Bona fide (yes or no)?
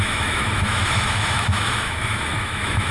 no